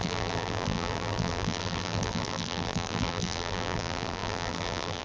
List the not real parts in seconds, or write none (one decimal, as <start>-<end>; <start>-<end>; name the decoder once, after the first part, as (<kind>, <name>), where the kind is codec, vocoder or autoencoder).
0.0-5.0 (vocoder, BigVGAN v2)